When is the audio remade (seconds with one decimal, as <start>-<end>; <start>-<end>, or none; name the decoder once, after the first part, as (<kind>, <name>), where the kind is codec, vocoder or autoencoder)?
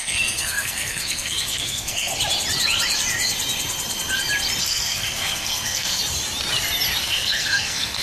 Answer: 0.0-2.1 (codec, SNAC); 4.6-6.0; 7.0-8.0